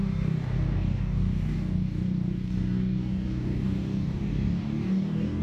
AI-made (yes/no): yes